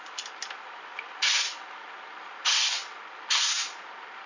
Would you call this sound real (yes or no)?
yes